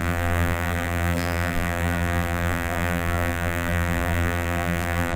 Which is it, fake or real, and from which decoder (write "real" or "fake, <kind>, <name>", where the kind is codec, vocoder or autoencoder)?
fake, vocoder, BigVGAN v2